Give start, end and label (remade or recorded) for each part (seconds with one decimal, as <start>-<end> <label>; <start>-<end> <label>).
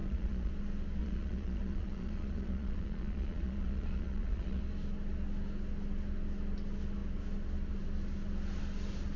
0.0-0.5 remade; 0.5-1.0 recorded; 1.0-4.6 remade; 4.6-9.2 recorded